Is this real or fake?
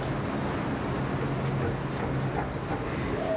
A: real